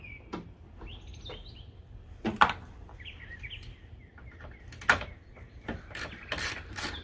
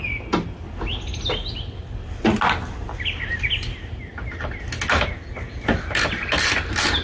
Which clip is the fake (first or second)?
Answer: first